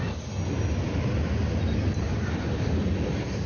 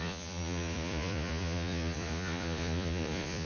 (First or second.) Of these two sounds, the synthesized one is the second